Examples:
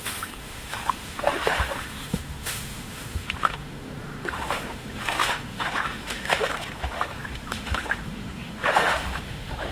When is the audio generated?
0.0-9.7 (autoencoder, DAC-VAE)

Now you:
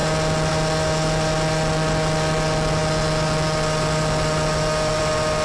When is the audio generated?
none

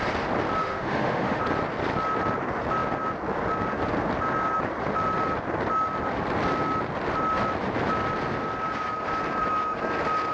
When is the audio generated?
0.6-1.4 (autoencoder, DAC-VAE)

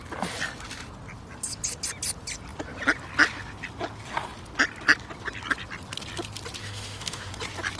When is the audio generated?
6.6-7.3 (autoencoder, DAC-VAE)

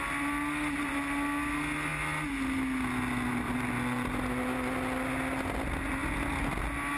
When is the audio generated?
none